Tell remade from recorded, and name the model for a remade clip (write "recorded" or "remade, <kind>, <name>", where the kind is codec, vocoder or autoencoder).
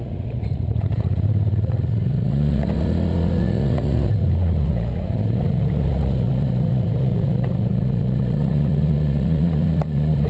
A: remade, vocoder, Vocos